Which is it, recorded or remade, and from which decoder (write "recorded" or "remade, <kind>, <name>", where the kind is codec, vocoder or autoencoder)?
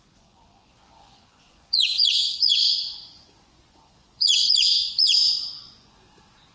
remade, vocoder, Vocos